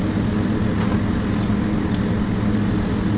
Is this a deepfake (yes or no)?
no